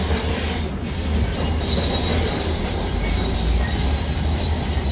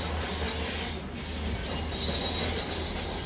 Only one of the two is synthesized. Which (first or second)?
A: first